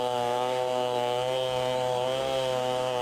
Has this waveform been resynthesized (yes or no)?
yes